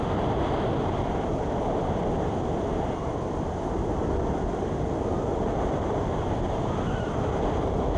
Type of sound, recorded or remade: recorded